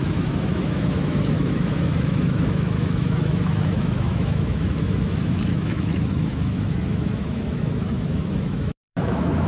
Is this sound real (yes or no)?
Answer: no